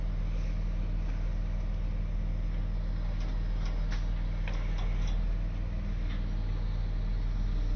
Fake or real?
real